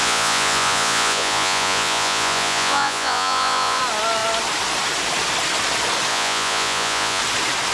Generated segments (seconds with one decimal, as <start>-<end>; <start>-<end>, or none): 0.0-3.8; 6.1-7.2